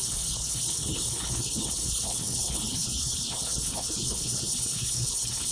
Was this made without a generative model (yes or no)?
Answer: no